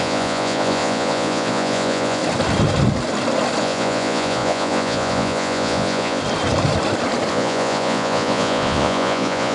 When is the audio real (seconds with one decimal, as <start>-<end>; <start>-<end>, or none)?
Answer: 2.2-3.6; 6.2-7.3